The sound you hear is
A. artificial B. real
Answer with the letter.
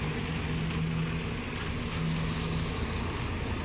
B